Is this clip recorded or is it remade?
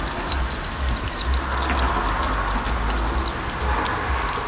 recorded